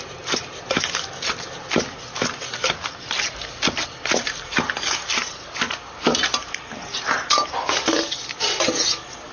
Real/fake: real